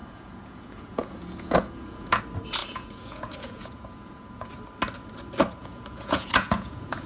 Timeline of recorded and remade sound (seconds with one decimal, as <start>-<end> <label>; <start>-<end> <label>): 0.0-2.2 remade; 2.2-2.6 recorded; 2.6-4.5 remade; 4.5-5.6 recorded; 5.6-7.1 remade